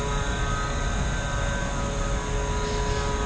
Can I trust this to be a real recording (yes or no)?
yes